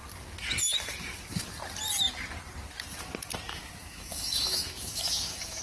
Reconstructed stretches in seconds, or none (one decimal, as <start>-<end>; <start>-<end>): 3.5-5.6